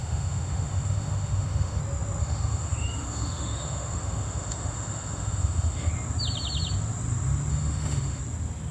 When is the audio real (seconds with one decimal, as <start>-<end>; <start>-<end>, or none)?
1.8-2.2; 5.9-7.5; 8.2-8.7